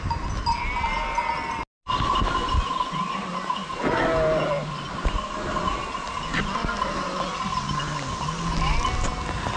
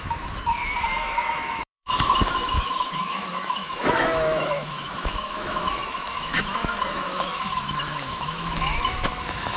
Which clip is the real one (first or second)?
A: first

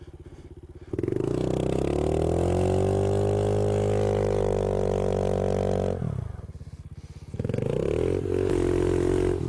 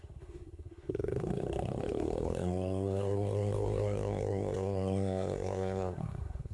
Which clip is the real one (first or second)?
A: first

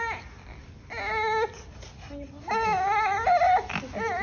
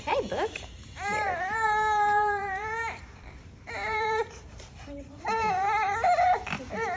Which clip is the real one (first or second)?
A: first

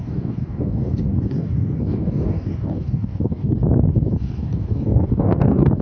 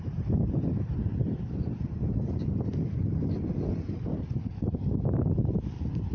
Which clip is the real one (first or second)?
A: second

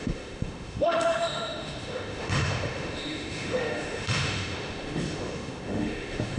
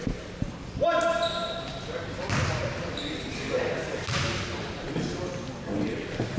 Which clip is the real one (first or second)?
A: second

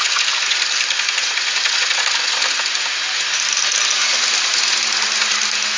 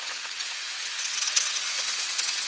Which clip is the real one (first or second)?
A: first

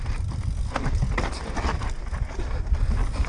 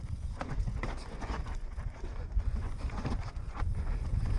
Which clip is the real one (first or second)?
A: first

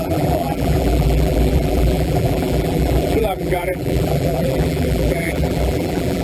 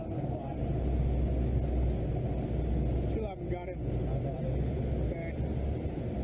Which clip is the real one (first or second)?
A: second